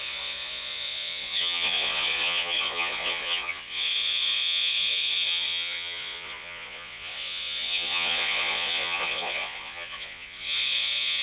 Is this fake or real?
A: fake